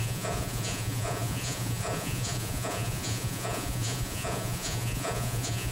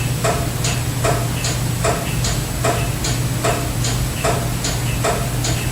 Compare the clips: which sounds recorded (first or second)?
second